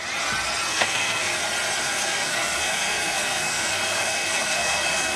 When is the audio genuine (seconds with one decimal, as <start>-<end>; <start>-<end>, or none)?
0.0-0.7; 1.4-1.8

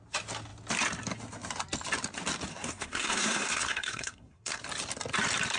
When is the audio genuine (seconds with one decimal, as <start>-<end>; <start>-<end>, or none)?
0.0-2.5; 4.6-5.6

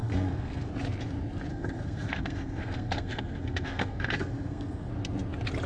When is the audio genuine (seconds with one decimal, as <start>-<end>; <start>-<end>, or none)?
0.7-1.5; 4.9-5.7

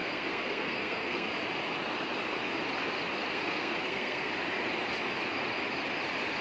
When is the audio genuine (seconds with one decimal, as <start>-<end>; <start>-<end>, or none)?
1.3-3.3; 4.3-6.4

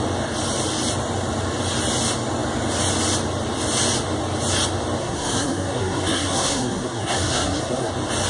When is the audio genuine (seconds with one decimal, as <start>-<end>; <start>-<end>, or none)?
0.0-5.0; 7.9-8.3

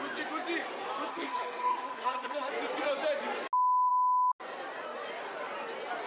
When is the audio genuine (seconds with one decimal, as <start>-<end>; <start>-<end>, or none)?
0.0-1.1; 2.5-6.1

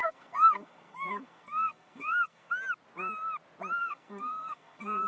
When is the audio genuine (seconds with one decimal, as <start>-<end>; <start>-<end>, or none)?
2.5-3.8